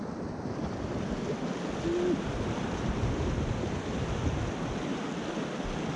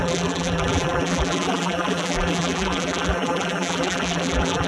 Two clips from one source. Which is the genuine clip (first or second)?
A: first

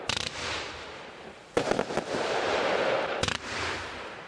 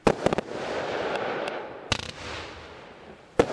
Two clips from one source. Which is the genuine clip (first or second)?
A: second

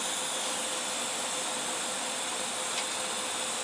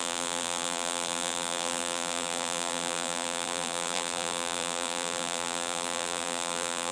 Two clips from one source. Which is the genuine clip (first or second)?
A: first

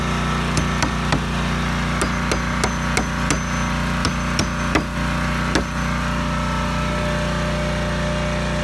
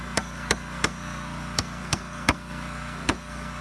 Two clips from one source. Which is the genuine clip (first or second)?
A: first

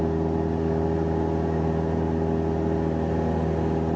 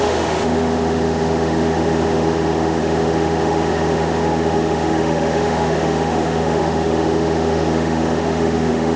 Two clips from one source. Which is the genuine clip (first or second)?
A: first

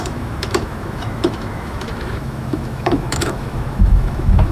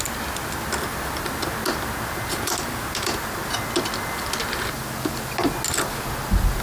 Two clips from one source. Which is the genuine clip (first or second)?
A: second